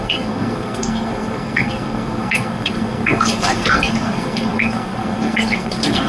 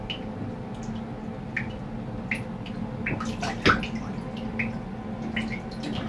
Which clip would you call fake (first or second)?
first